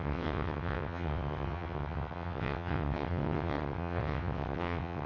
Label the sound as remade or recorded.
remade